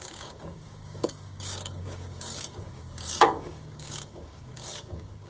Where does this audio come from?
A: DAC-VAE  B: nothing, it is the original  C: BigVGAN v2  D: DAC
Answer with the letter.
D